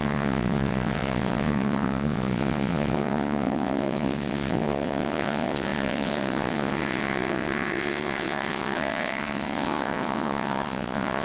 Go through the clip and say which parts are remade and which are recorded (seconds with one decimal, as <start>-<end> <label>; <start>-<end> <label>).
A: 0.0-11.2 remade